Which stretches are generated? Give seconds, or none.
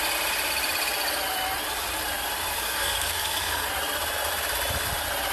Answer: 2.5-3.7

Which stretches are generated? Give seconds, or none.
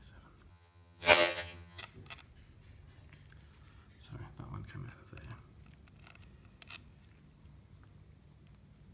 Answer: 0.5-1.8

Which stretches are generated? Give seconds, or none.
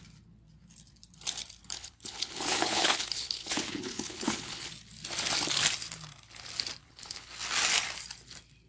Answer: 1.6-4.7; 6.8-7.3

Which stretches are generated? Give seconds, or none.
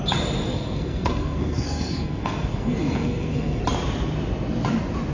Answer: 0.5-3.6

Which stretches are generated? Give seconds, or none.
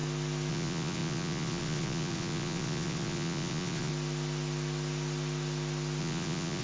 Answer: 0.5-3.9; 6.0-6.6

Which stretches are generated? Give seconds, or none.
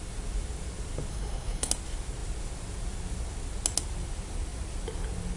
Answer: 1.1-1.7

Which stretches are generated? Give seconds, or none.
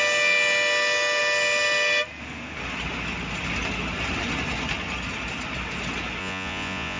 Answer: 6.2-7.0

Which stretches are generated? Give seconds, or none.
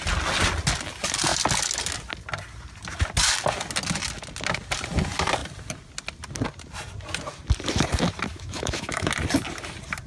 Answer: 8.3-9.1